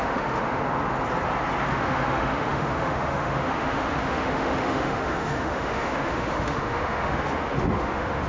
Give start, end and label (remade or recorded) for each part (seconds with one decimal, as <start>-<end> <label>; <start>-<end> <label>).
0.0-0.6 remade; 0.6-1.7 recorded; 1.7-8.3 remade